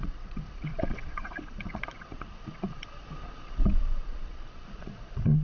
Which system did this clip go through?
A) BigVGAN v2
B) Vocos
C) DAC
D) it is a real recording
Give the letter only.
B